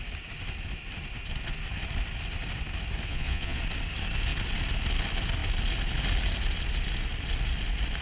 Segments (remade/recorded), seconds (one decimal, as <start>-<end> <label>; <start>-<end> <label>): 0.0-3.1 recorded; 3.1-3.6 remade; 3.6-8.0 recorded